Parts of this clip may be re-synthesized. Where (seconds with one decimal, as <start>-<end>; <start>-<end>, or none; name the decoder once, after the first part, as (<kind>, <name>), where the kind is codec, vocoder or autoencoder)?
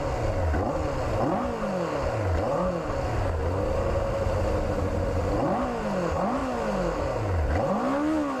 none